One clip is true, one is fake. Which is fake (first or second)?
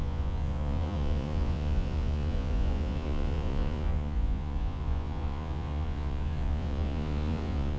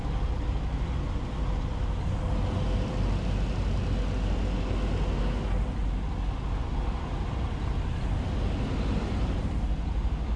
first